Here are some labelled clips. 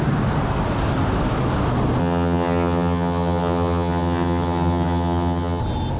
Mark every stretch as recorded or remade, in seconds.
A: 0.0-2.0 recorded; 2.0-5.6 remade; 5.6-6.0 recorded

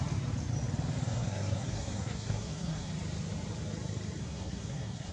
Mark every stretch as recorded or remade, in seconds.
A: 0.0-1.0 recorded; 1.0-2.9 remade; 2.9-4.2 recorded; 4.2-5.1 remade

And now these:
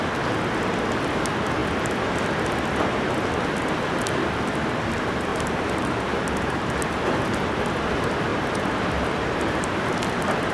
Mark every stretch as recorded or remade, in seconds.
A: 0.0-5.3 recorded; 5.3-6.7 remade; 6.7-8.3 recorded; 8.3-10.5 remade